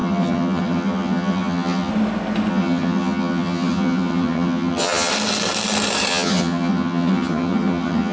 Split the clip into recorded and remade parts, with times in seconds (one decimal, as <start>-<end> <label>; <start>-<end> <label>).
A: 0.0-1.9 remade; 1.9-2.5 recorded; 2.5-5.1 remade; 5.1-6.1 recorded; 6.1-8.1 remade

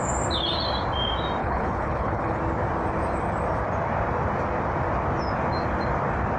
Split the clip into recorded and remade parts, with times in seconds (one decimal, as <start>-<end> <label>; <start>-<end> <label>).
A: 0.0-1.4 recorded; 1.4-2.4 remade; 2.4-6.4 recorded

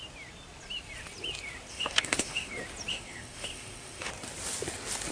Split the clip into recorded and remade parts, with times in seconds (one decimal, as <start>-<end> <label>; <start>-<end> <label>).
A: 0.0-1.7 recorded; 1.7-2.5 remade; 2.5-2.9 recorded; 2.9-4.1 remade; 4.1-5.1 recorded

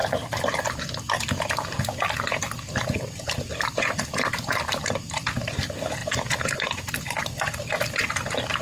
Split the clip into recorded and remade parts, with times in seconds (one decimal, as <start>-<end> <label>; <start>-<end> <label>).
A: 0.0-6.0 recorded; 6.0-6.9 remade; 6.9-8.6 recorded

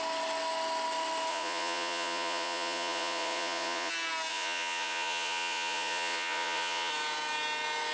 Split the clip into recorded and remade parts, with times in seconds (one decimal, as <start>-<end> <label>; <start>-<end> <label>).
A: 0.0-1.3 recorded; 1.3-3.9 remade; 3.9-4.3 recorded; 4.3-6.9 remade; 6.9-7.9 recorded